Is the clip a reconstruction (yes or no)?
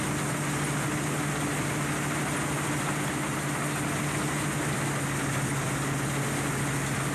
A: no